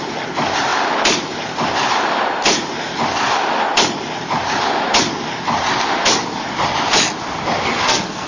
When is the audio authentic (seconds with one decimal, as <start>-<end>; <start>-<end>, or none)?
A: 0.0-7.7